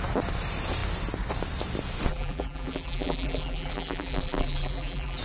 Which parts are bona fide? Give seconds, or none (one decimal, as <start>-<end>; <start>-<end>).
0.0-2.1

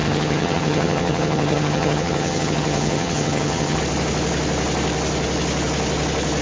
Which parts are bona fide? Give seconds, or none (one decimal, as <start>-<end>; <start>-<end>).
3.8-6.4

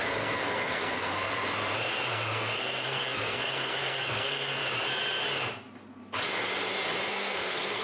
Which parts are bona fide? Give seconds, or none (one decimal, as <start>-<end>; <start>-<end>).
1.4-2.1; 4.6-7.1

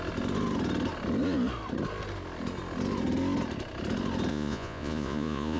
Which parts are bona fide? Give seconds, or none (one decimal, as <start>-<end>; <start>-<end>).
0.0-4.3

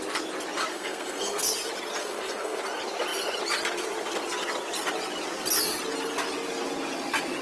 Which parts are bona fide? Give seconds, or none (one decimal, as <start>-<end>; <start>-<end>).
0.0-0.7; 1.5-2.0; 2.6-7.4

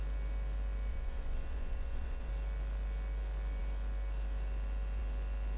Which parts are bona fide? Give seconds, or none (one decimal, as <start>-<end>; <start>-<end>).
0.0-0.9; 2.3-5.6

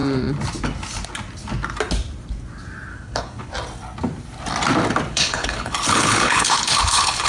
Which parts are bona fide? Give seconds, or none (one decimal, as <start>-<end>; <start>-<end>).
0.0-2.9; 3.5-5.1

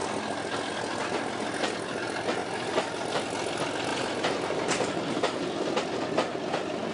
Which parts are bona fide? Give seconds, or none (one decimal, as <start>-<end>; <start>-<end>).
0.0-2.4; 3.1-3.9; 5.6-6.9